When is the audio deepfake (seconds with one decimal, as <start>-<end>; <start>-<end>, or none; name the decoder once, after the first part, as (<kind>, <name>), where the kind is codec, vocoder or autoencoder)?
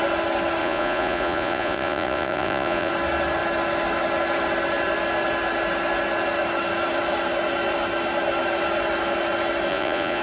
0.6-2.9 (vocoder, Vocos); 9.7-10.2